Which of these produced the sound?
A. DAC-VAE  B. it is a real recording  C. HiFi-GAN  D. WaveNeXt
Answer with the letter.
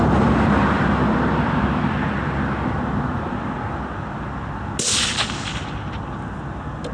B